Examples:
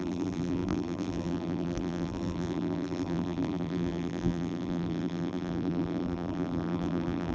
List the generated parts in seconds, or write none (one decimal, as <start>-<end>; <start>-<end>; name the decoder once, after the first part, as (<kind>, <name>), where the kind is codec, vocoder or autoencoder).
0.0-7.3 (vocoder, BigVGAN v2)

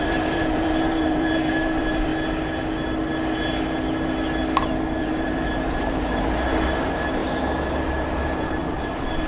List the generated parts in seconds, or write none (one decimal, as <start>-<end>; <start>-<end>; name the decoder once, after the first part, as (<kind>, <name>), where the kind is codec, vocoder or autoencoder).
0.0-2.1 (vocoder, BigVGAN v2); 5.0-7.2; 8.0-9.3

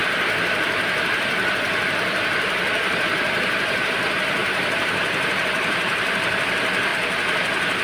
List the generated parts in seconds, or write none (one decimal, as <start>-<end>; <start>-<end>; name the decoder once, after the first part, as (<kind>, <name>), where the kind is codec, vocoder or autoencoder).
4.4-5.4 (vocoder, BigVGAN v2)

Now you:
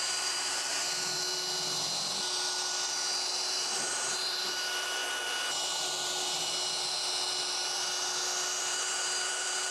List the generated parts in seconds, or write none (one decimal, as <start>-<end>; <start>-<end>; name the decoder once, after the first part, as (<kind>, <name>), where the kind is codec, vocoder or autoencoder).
0.0-0.8 (vocoder, BigVGAN v2); 3.3-5.0; 8.6-9.7

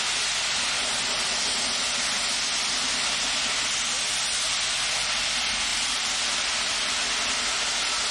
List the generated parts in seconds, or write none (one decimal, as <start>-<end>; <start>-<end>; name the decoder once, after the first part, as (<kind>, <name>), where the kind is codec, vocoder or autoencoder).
5.7-6.7 (vocoder, BigVGAN v2)

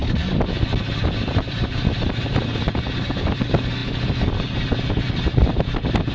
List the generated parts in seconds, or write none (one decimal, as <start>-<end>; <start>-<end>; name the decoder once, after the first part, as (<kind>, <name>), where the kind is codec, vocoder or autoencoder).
0.0-6.1 (vocoder, BigVGAN v2)